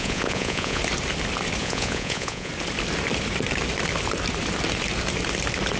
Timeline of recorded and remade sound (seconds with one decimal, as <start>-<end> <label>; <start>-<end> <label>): 0.0-0.8 remade; 0.8-1.6 recorded; 1.6-2.5 remade; 2.5-5.8 recorded